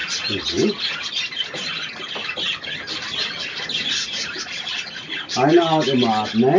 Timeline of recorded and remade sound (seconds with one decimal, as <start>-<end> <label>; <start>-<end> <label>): 0.0-6.6 recorded